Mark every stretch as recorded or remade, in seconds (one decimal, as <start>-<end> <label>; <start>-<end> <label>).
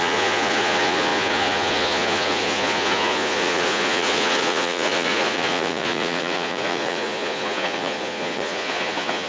0.0-9.3 remade